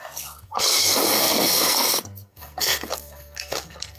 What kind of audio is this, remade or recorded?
remade